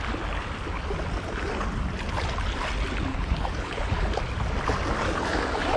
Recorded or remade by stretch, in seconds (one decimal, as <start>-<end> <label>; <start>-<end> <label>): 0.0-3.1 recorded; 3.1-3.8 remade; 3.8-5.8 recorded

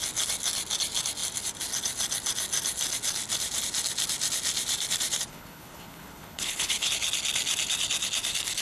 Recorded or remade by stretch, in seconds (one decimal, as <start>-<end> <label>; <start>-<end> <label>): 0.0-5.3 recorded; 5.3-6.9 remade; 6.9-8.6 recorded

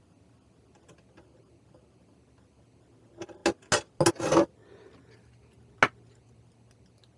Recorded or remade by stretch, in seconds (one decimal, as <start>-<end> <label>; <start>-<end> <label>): 0.0-7.2 recorded